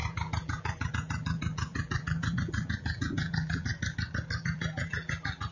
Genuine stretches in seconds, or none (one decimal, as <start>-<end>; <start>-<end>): 3.7-4.4